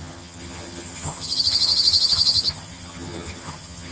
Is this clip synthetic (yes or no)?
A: yes